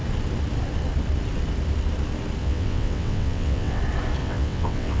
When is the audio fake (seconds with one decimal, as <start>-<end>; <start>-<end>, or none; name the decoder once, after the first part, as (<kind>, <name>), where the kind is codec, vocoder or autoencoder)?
2.4-3.8 (vocoder, WaveNeXt); 4.2-5.0